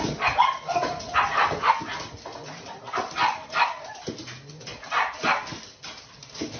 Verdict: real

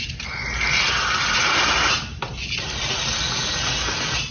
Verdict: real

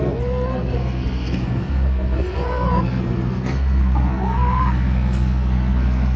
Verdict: fake